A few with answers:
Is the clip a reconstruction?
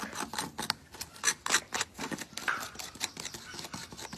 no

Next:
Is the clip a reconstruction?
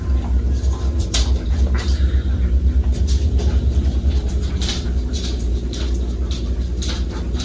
yes